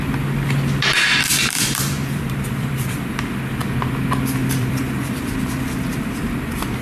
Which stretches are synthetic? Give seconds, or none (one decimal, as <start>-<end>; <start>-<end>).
1.3-3.1; 4.4-5.2